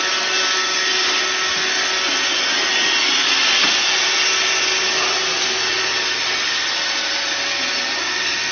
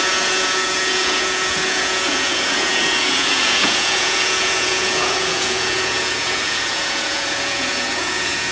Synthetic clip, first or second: second